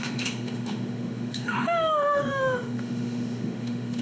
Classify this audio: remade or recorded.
remade